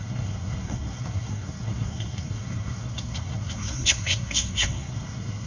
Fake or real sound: fake